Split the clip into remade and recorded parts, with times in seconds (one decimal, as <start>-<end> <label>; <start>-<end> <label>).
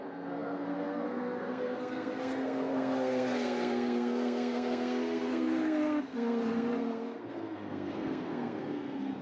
0.0-9.2 remade